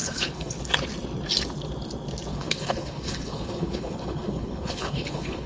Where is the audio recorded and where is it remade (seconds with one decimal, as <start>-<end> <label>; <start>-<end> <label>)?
0.0-0.5 remade; 0.5-2.3 recorded; 2.3-5.5 remade